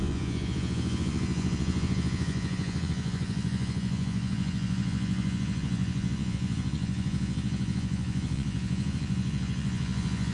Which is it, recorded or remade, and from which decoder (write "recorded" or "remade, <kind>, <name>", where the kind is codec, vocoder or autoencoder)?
remade, vocoder, Vocos